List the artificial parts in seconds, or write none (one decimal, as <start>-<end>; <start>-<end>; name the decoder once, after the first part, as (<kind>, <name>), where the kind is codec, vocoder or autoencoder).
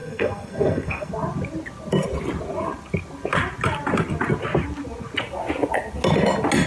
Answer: 0.0-1.1 (codec, SNAC)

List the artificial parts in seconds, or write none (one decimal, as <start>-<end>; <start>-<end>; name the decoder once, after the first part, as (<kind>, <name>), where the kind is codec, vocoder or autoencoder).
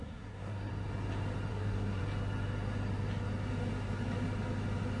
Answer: 0.0-0.7 (codec, SNAC); 1.5-2.0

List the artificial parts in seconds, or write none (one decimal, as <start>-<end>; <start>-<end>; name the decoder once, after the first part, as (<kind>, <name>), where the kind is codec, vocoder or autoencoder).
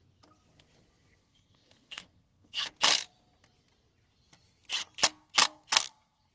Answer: 1.2-2.7 (codec, SNAC); 5.0-6.3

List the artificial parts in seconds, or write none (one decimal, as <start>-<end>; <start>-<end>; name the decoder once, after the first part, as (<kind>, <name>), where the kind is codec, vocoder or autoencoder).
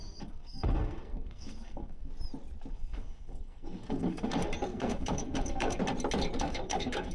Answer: 0.0-2.1 (codec, SNAC); 2.7-5.8; 6.4-7.1